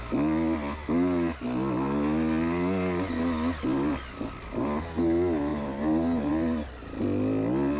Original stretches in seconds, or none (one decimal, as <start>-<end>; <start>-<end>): 0.0-7.8